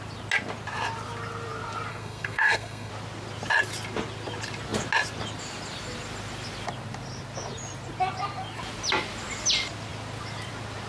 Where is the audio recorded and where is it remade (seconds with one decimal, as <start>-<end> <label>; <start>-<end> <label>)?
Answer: 0.0-1.9 recorded; 1.9-2.9 remade; 2.9-10.9 recorded